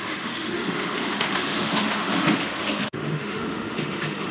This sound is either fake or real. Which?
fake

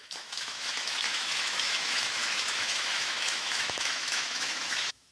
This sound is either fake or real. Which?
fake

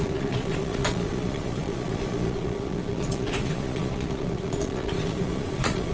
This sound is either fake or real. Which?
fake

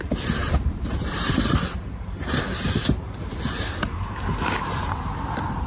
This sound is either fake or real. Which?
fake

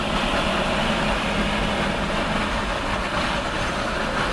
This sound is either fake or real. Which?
real